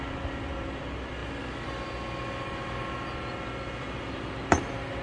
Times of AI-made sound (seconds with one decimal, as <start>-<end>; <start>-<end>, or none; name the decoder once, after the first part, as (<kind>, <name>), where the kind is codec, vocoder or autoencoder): none